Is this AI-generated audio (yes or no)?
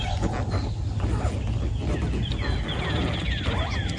no